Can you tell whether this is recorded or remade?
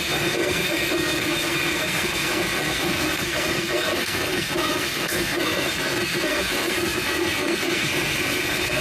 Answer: remade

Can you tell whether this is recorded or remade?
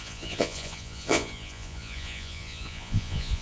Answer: remade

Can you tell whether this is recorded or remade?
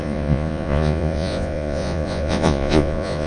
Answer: remade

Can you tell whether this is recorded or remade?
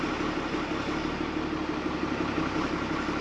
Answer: recorded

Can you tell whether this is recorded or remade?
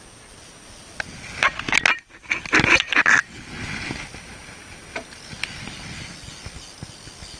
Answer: recorded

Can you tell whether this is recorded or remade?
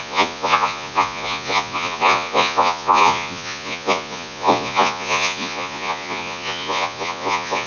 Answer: remade